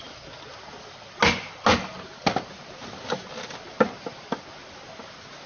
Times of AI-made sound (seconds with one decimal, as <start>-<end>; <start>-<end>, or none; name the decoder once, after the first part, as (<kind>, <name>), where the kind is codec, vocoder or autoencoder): none